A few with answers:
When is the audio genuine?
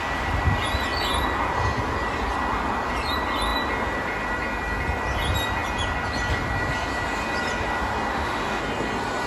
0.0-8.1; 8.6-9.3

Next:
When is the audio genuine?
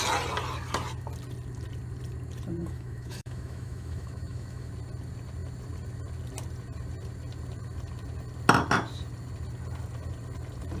0.0-2.6; 4.7-10.8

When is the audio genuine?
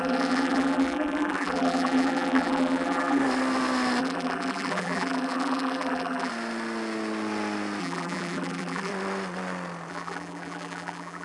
3.2-4.0; 6.3-7.8; 8.9-9.9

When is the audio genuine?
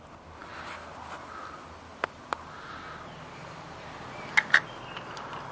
0.0-5.5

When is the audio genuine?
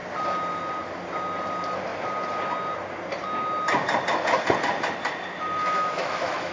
0.0-5.6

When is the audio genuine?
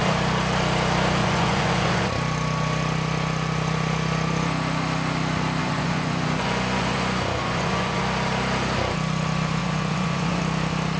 0.0-1.2; 2.1-5.6; 8.0-9.6; 10.4-11.0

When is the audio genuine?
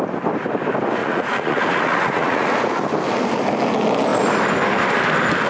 0.0-1.0; 2.5-5.5